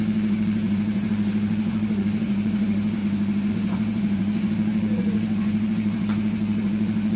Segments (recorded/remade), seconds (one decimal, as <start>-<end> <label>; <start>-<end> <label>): 0.0-3.0 remade; 3.0-3.5 recorded; 3.5-7.2 remade